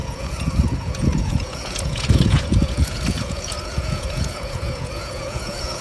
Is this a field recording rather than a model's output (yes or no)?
no